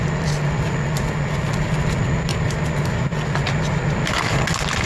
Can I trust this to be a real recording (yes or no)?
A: yes